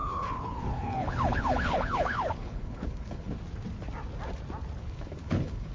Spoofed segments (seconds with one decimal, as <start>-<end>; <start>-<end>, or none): 0.0-3.4; 4.8-5.7